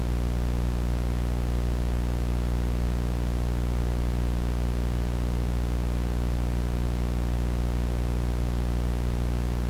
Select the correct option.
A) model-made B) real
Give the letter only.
B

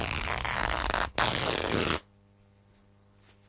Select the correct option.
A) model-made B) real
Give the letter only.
B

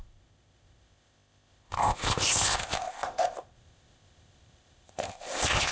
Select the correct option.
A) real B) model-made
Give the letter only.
B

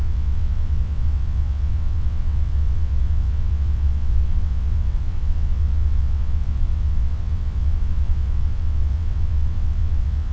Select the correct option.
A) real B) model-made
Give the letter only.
B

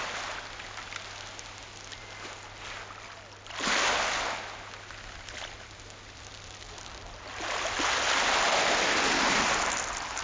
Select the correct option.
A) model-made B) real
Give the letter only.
B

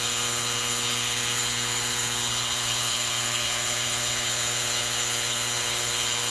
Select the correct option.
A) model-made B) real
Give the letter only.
A